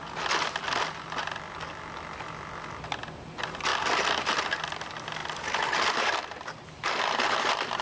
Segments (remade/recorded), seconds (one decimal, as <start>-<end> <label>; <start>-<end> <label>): 0.0-3.7 remade; 3.7-4.4 recorded; 4.4-7.8 remade